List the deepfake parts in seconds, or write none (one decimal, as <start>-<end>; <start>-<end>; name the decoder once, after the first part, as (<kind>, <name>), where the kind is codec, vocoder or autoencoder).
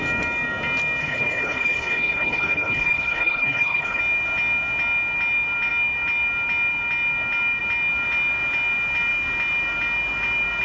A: 1.0-4.0 (codec, HILCodec)